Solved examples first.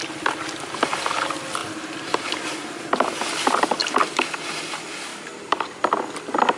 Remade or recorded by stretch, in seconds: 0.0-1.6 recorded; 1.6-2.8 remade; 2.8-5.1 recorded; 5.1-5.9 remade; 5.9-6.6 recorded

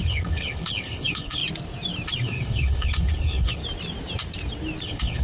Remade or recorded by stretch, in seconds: 0.0-1.4 remade; 1.4-2.2 recorded; 2.2-3.6 remade; 3.6-4.8 recorded; 4.8-5.2 remade

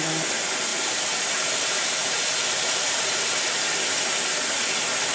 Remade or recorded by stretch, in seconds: 0.0-0.7 recorded; 0.7-3.8 remade; 3.8-5.1 recorded

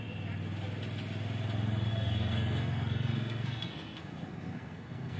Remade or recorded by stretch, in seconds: 0.0-1.9 recorded; 1.9-5.2 remade